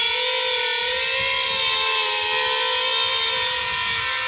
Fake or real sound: real